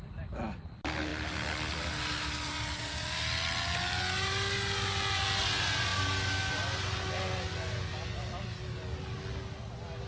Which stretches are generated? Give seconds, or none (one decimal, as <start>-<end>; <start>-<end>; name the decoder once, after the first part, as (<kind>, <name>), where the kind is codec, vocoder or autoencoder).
none